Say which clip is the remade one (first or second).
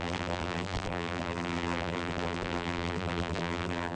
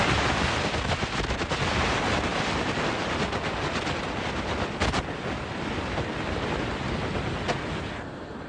first